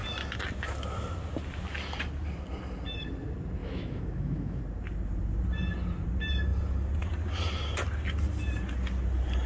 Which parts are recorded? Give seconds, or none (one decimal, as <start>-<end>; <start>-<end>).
0.0-3.6; 4.6-9.5